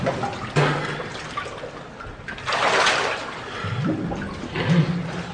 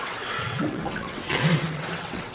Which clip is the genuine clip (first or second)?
first